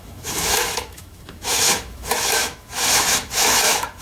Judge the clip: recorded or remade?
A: remade